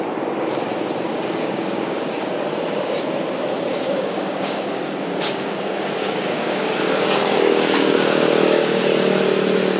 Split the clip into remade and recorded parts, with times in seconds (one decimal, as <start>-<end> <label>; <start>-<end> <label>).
0.0-1.1 recorded; 1.1-2.0 remade; 2.0-3.7 recorded; 3.7-8.8 remade; 8.8-9.8 recorded